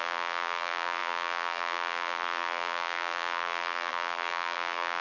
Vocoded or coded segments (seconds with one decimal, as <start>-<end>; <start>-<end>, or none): 0.0-5.0